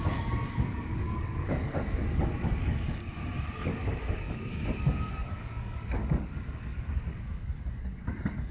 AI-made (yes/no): yes